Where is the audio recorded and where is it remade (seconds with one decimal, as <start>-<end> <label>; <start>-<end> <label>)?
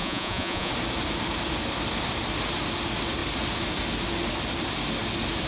0.0-0.7 remade; 0.7-5.5 recorded